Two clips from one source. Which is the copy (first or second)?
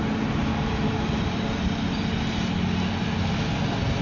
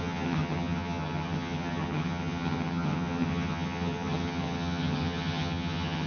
second